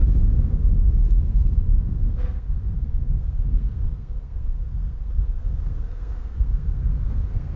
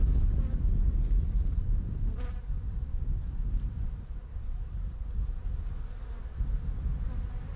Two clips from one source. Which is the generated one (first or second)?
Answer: first